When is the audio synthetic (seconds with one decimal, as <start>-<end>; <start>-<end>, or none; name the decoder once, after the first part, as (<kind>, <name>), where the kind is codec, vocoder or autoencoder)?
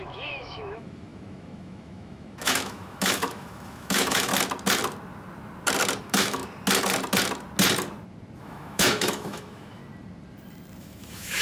0.0-4.3 (autoencoder, DAC-VAE); 6.0-6.4; 8.4-9.8; 10.8-11.4